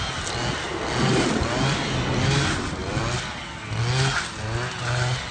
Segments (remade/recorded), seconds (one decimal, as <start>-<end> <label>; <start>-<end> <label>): 0.0-5.3 recorded